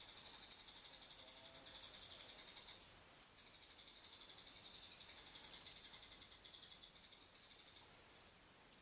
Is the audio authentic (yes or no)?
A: yes